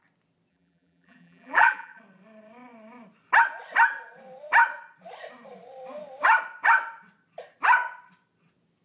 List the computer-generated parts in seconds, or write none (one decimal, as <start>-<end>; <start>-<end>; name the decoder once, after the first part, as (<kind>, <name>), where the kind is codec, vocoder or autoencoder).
0.5-2.0 (vocoder, BigVGAN v2)